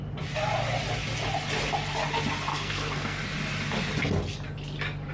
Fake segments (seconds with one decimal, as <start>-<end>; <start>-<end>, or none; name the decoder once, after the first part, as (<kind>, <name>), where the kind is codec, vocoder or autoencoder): 2.5-3.2 (codec, SNAC)